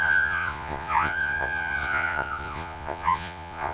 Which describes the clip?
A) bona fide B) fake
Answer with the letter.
B